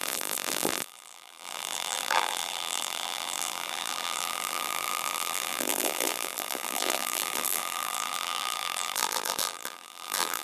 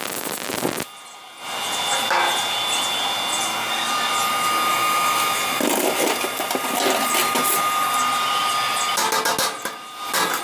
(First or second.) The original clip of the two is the second